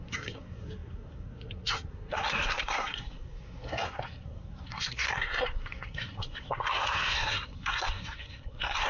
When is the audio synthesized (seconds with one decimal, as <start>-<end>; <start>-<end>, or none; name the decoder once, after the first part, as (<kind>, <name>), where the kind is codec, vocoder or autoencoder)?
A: 0.0-8.9 (codec, SNAC)